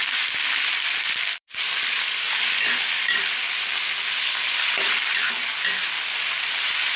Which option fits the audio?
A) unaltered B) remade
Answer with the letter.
B